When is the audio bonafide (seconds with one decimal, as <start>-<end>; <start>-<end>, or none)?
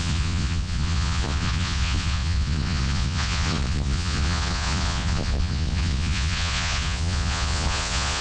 none